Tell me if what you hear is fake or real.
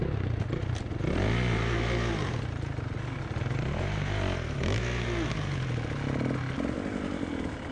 real